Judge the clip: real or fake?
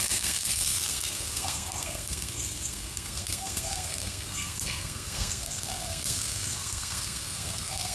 fake